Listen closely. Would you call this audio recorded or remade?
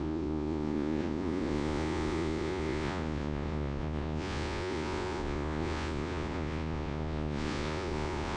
remade